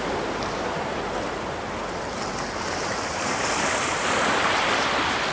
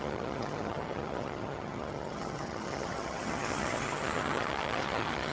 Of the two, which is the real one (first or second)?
first